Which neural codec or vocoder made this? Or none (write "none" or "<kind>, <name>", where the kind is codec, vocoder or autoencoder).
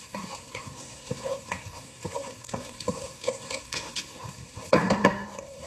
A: codec, SNAC